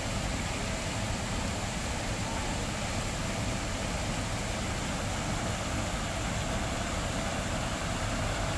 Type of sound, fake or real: real